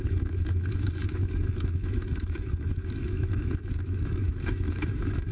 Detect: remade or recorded remade